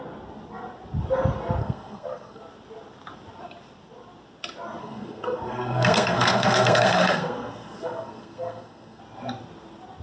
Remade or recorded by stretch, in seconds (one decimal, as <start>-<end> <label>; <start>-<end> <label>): 0.0-1.6 recorded; 1.6-2.4 remade; 2.4-4.8 recorded; 4.8-9.0 remade; 9.0-10.0 recorded